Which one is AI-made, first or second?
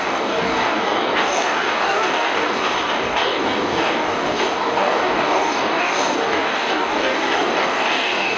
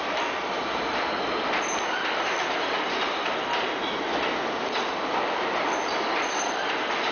first